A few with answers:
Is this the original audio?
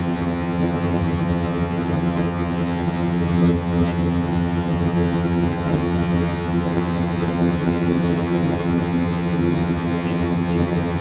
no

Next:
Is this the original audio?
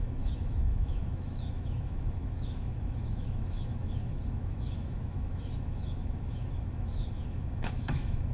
no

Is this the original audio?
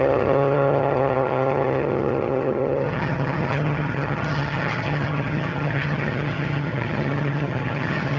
no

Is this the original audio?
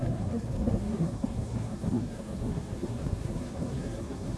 no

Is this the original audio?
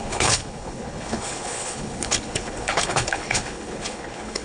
no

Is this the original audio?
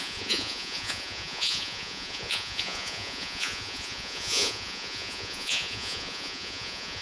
no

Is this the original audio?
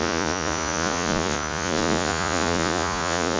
no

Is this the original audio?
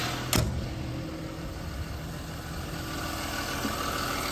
yes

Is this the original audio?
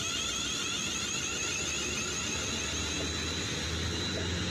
yes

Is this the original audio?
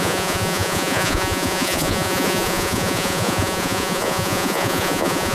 no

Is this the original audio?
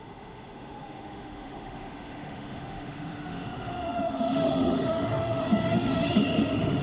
no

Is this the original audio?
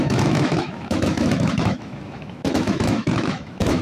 no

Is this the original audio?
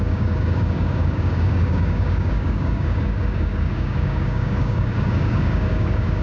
no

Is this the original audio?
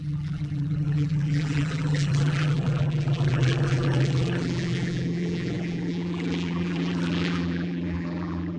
no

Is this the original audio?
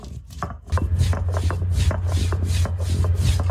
yes